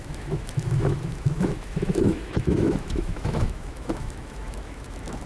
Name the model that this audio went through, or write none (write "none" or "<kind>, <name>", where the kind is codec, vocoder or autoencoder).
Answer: autoencoder, DAC-VAE